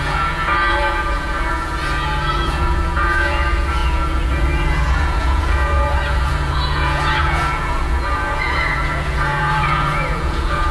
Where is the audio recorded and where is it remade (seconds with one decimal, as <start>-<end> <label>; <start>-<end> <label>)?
0.0-10.7 remade